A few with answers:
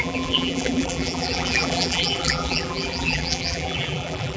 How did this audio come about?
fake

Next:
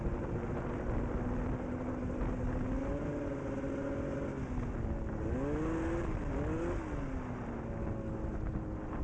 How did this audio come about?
real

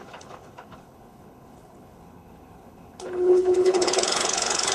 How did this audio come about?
fake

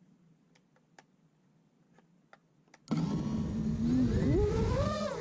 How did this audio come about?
real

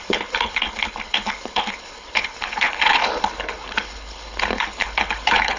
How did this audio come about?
fake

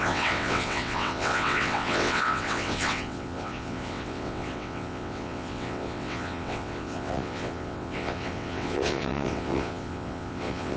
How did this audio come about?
fake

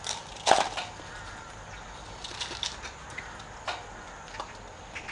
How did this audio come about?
real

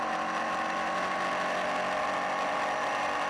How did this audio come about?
real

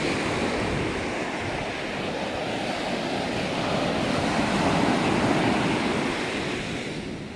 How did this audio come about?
real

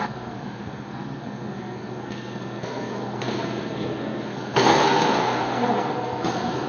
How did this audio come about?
fake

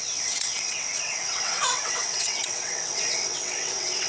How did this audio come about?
fake